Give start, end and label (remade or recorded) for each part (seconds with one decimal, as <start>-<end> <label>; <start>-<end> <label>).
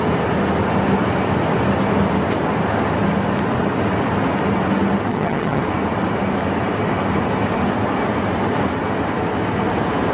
0.0-5.1 recorded; 5.1-5.6 remade; 5.6-10.1 recorded